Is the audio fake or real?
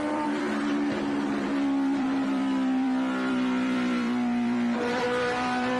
fake